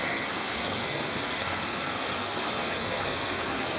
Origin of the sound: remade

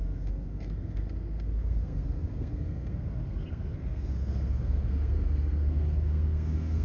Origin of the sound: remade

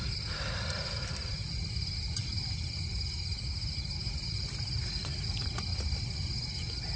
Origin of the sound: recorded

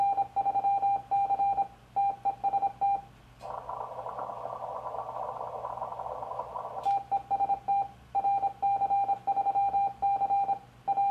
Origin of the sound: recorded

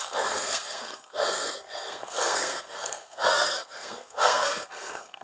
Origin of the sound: remade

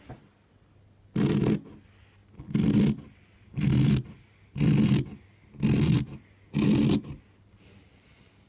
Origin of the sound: recorded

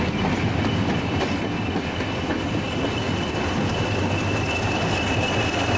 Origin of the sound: recorded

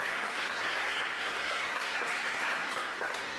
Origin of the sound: remade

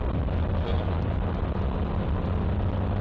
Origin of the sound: recorded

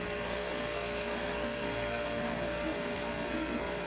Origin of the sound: remade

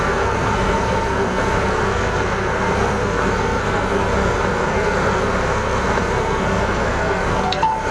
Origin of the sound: remade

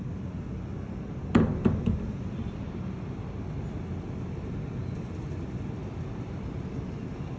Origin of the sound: recorded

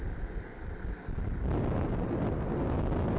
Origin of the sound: recorded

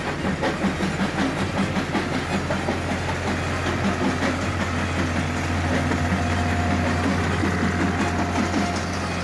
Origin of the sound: recorded